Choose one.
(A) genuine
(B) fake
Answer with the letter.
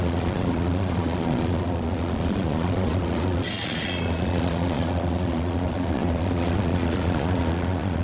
B